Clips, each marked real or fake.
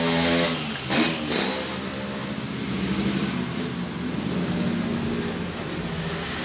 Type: real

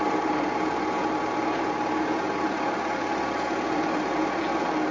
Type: real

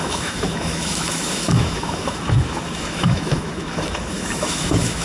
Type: fake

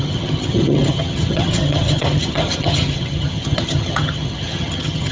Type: fake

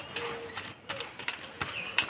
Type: real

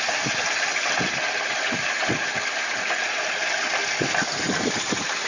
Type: real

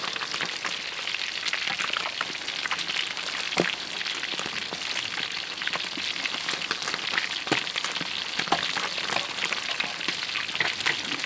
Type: real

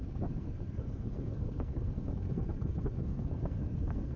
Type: fake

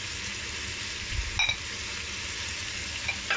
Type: real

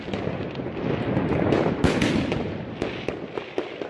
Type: real